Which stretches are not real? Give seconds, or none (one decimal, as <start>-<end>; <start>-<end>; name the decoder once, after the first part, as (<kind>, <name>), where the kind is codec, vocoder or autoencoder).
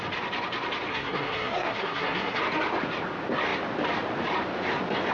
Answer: 0.9-2.4 (codec, SNAC)